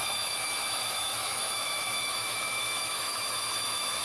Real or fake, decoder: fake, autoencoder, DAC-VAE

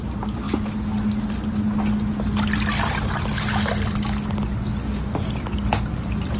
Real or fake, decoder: real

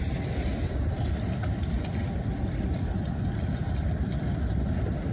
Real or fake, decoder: real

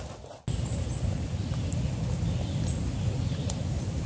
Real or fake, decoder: real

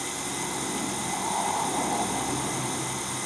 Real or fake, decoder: real